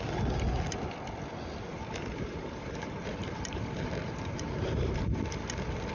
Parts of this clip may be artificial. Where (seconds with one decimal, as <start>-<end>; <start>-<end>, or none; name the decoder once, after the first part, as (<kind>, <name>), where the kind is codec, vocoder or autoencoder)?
1.7-5.2 (vocoder, BigVGAN v2)